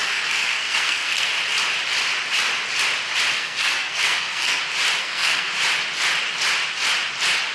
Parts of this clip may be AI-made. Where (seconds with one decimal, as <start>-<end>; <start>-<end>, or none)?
0.0-1.3; 3.3-4.6; 5.0-5.5

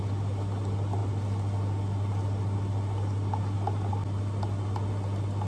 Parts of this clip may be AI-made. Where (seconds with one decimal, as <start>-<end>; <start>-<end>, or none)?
none

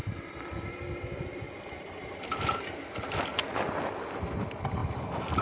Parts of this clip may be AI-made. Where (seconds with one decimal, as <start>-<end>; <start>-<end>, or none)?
none